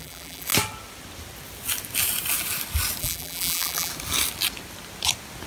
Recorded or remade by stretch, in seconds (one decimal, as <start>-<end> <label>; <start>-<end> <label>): 0.0-0.5 remade; 0.5-3.0 recorded; 3.0-3.9 remade; 3.9-5.5 recorded

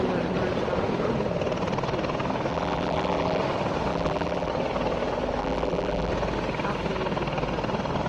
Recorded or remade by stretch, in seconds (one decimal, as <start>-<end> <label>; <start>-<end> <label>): 0.0-2.5 recorded; 2.5-3.4 remade; 3.4-3.9 recorded; 3.9-4.5 remade; 4.5-5.4 recorded; 5.4-6.1 remade; 6.1-8.1 recorded

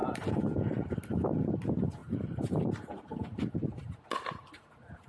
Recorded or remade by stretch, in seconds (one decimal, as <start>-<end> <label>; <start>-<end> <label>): 0.0-1.3 remade; 1.3-2.0 recorded; 2.0-3.0 remade; 3.0-5.1 recorded

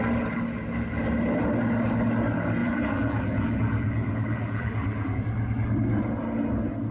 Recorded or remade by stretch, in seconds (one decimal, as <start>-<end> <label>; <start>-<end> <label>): 0.0-2.6 recorded; 2.6-5.2 remade; 5.2-6.9 recorded

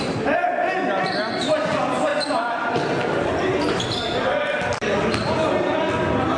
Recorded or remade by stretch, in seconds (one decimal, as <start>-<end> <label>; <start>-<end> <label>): 0.0-6.4 recorded

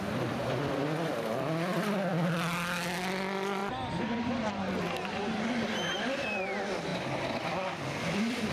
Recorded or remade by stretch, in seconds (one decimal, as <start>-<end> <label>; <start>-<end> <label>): 0.0-8.5 recorded